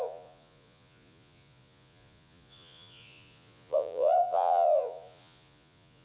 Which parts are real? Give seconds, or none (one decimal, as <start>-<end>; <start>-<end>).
none

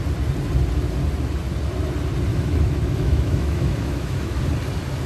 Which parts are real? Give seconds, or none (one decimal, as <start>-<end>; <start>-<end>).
0.0-2.3; 4.4-5.1

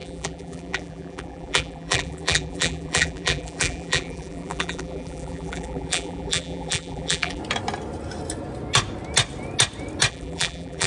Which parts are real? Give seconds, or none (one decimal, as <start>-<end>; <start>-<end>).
7.4-10.1

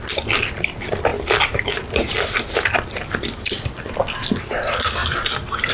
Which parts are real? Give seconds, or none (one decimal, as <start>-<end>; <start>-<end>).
0.0-5.7

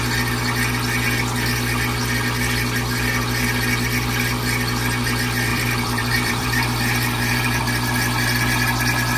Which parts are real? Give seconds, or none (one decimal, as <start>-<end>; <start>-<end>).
0.0-5.5; 7.6-9.2

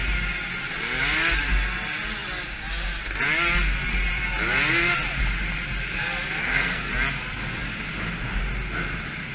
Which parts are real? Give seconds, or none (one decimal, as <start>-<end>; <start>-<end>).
0.0-6.4; 6.9-9.3